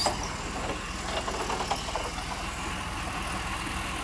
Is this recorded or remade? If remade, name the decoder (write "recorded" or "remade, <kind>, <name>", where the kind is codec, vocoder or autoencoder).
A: recorded